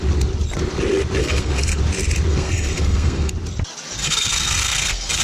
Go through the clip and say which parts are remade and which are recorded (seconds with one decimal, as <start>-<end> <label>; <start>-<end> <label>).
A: 0.0-1.2 recorded; 1.2-1.8 remade; 1.8-2.3 recorded; 2.3-3.3 remade; 3.3-4.0 recorded; 4.0-5.2 remade